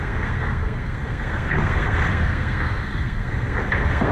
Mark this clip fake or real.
fake